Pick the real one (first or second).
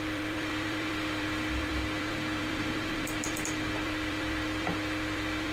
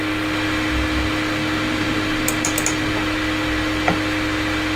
second